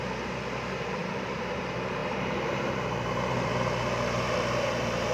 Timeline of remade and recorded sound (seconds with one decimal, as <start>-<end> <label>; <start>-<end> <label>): 0.0-1.0 recorded; 1.0-1.6 remade; 1.6-2.0 recorded; 2.0-3.5 remade; 3.5-5.1 recorded